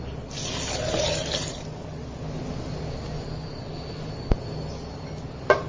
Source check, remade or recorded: recorded